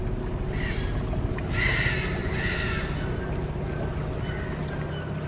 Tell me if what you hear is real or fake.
real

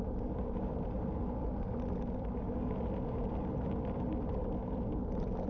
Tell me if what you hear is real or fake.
real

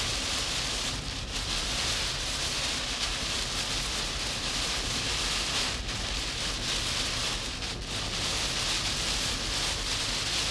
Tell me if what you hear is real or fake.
real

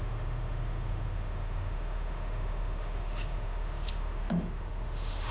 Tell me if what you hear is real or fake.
fake